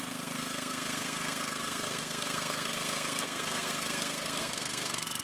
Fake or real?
fake